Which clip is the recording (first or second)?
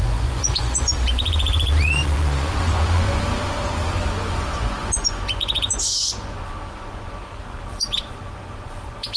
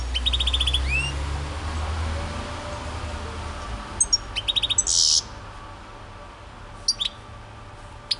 second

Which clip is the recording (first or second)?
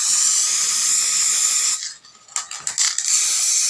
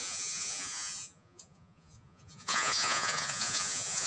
first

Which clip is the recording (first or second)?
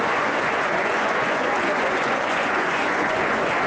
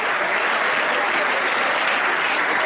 second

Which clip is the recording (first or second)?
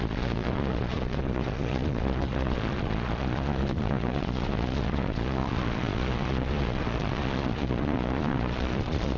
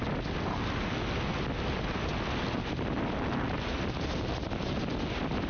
second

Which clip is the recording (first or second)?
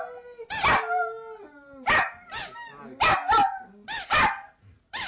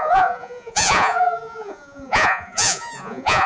first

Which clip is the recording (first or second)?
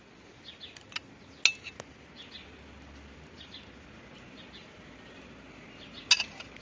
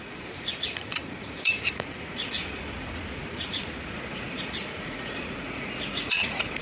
first